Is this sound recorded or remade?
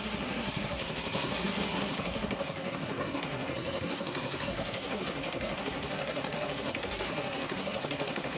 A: remade